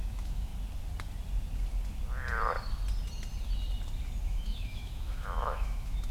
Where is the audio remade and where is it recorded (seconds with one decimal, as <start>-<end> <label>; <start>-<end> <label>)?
0.0-0.5 remade; 0.5-4.2 recorded; 4.2-6.1 remade